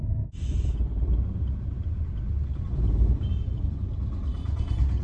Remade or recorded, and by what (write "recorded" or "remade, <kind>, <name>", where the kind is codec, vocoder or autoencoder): recorded